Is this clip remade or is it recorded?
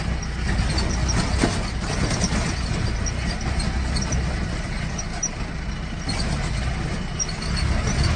recorded